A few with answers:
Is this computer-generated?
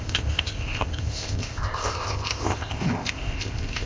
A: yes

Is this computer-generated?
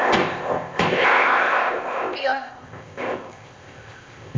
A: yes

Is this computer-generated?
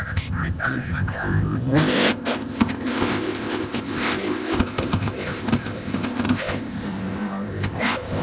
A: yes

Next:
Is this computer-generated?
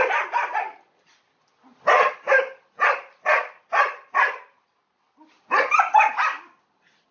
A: no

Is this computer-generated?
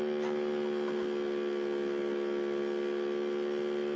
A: no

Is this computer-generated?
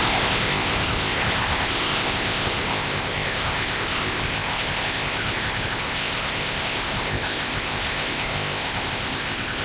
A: yes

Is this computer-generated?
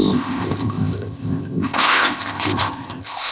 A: yes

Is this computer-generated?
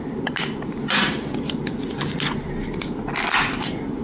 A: no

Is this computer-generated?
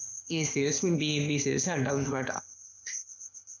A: yes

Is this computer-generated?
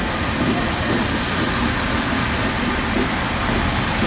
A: no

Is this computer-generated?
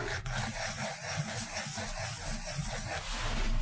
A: no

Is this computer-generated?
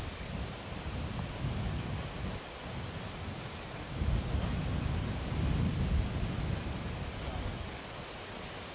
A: no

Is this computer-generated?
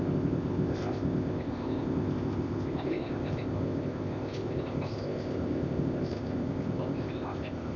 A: yes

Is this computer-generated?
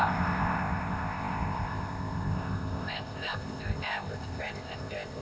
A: yes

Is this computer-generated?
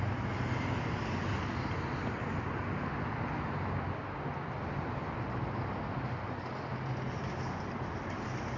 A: no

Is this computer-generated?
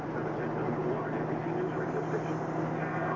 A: no